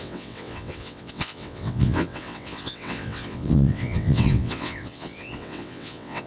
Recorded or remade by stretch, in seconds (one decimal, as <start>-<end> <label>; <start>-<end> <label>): 0.0-6.3 remade